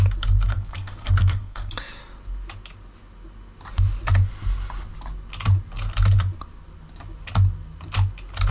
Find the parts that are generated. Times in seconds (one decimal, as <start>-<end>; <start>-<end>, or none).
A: 0.5-1.7